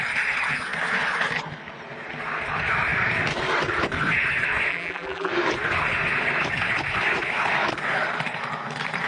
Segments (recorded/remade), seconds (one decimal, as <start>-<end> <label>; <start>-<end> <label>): 0.0-4.7 recorded; 4.7-5.3 remade; 5.3-9.1 recorded